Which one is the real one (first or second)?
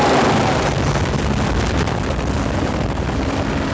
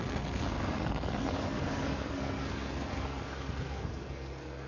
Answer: first